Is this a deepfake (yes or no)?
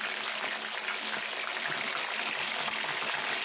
no